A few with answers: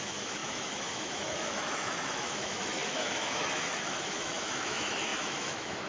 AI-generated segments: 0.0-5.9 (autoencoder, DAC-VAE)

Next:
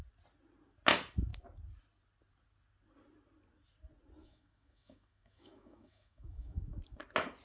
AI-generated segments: 4.2-6.6 (autoencoder, DAC-VAE)

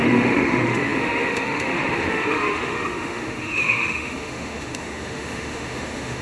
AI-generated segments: 0.0-6.2 (autoencoder, DAC-VAE)